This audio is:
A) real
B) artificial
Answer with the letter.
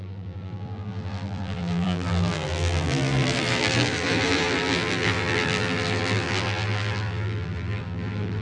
B